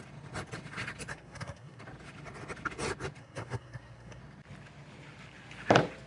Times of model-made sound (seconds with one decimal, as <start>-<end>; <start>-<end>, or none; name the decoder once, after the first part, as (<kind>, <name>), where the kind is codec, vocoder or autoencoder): 1.1-1.8 (codec, SNAC); 3.2-4.2

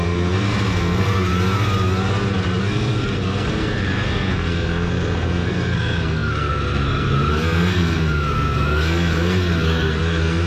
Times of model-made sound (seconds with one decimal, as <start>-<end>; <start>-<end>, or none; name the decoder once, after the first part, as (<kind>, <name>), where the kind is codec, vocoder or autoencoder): 0.0-1.3 (codec, SNAC); 2.6-10.5

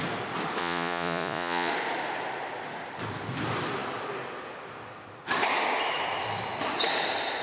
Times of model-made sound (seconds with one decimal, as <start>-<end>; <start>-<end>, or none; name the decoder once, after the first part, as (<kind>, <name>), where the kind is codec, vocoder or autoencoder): 0.6-1.7 (vocoder, Vocos)

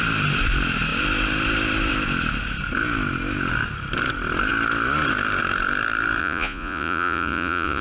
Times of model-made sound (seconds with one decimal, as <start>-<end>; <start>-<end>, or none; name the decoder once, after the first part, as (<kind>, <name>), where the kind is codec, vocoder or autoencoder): 6.2-7.8 (vocoder, Vocos)

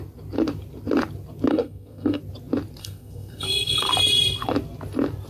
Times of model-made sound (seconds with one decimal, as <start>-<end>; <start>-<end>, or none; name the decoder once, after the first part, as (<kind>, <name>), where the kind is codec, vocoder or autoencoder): 1.5-2.2 (codec, SNAC); 2.8-3.9

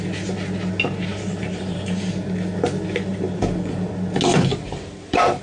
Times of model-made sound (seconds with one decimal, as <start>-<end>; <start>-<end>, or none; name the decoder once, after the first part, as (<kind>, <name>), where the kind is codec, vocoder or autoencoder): 1.1-2.1 (vocoder, BigVGAN v2); 3.1-3.9; 4.5-5.4